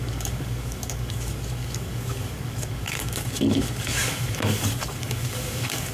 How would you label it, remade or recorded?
remade